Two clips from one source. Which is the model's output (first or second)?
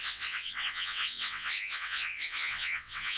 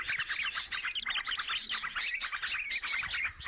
first